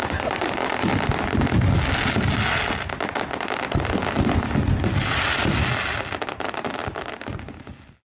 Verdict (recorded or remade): recorded